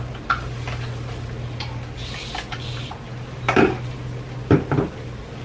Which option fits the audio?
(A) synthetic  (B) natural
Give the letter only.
B